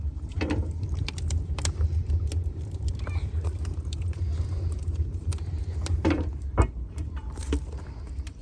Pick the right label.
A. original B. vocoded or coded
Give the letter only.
B